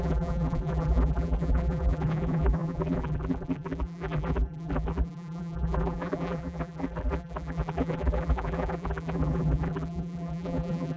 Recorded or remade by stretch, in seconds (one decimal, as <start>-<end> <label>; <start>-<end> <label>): 0.0-11.0 remade